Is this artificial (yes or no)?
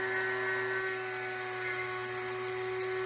no